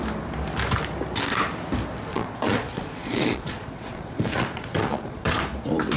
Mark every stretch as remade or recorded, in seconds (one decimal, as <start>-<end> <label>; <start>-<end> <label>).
0.0-2.1 recorded; 2.1-5.4 remade; 5.4-6.0 recorded